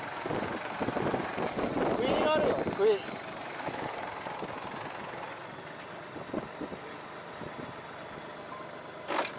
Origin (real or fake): real